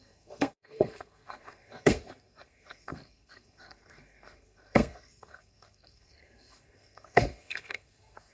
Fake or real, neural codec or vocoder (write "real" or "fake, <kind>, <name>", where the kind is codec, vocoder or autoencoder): fake, codec, SNAC